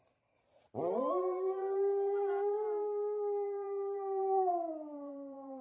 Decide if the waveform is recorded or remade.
remade